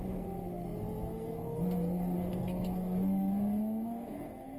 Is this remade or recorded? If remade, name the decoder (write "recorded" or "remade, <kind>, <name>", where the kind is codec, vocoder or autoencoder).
remade, codec, SNAC